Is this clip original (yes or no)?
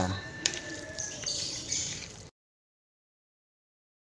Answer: no